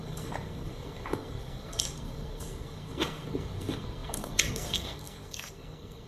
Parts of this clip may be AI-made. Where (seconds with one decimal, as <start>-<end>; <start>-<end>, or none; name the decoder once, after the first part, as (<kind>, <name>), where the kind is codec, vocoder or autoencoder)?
0.0-6.1 (codec, SNAC)